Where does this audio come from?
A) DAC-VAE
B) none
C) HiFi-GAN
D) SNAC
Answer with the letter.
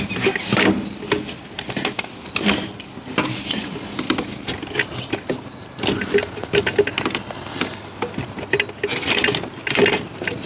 B